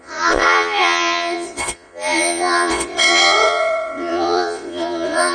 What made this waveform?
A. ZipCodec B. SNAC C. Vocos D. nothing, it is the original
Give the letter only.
C